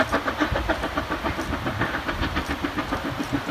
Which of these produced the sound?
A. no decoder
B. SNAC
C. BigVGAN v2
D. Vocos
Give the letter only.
A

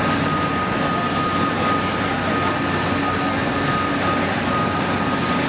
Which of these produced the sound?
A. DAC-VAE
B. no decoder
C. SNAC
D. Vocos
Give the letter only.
B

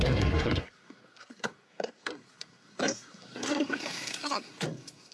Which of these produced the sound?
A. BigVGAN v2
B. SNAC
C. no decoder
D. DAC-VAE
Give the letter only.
B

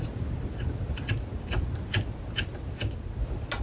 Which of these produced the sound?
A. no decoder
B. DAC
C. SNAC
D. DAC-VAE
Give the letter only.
A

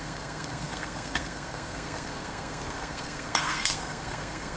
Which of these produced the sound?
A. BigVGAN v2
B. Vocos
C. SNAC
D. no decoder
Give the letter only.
C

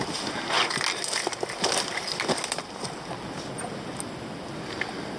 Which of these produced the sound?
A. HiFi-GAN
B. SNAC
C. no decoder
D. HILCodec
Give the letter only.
C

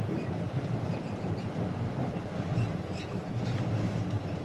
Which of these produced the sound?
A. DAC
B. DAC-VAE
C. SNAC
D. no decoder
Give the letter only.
D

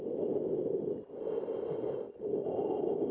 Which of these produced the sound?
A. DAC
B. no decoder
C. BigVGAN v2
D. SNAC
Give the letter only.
B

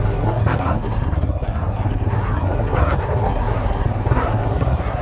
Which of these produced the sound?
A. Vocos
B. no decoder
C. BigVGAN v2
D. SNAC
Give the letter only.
D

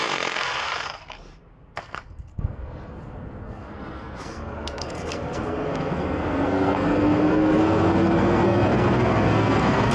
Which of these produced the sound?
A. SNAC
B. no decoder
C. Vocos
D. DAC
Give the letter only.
A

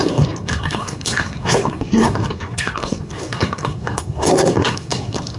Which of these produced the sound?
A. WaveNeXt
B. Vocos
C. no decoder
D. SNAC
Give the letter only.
D